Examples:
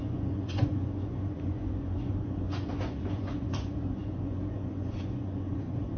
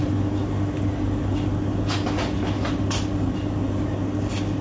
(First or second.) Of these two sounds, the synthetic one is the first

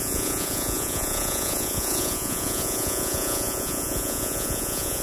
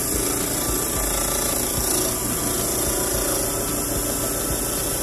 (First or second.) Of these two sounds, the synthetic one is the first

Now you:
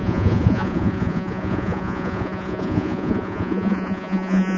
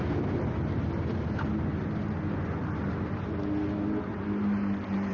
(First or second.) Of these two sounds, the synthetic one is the first